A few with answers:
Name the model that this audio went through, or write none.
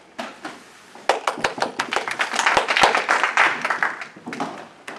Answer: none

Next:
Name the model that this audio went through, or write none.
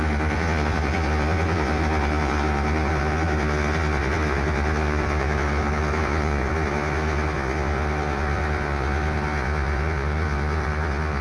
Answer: vocoder, Vocos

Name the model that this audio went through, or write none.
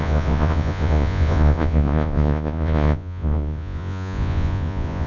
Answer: vocoder, Vocos